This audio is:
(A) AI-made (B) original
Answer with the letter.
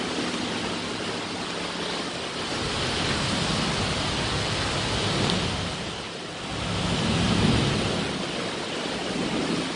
B